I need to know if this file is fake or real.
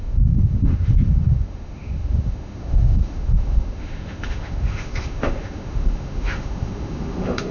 fake